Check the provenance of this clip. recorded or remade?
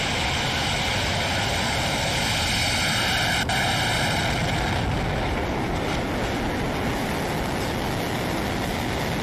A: recorded